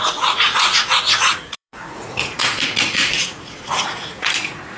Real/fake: fake